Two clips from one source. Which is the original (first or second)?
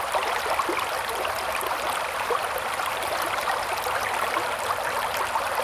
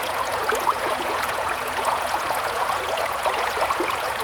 first